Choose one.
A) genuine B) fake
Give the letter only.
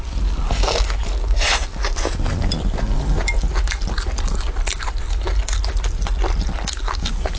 A